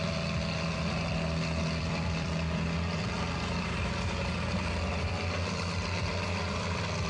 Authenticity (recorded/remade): remade